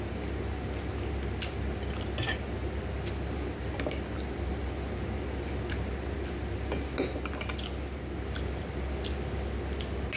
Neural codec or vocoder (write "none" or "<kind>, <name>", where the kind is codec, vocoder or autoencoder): none